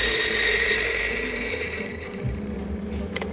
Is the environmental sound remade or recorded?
remade